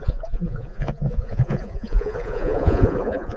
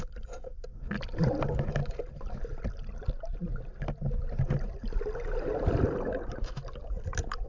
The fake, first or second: first